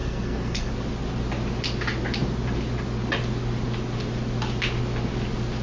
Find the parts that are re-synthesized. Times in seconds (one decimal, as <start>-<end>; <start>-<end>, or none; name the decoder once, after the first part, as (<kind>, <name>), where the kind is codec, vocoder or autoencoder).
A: 0.0-0.7 (codec, SNAC)